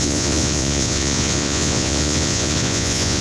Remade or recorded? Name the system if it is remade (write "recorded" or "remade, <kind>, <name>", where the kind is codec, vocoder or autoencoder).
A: remade, vocoder, Vocos